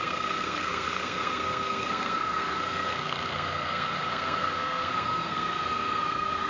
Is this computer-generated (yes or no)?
yes